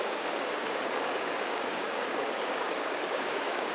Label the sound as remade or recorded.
remade